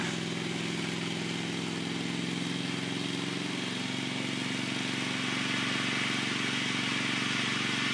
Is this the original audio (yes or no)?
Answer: yes